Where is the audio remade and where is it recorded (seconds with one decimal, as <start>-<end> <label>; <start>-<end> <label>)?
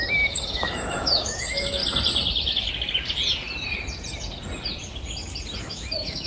0.0-1.8 remade; 1.8-5.6 recorded; 5.6-6.3 remade